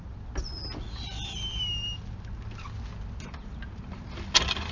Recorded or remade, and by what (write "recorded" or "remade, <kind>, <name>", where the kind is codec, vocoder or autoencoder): recorded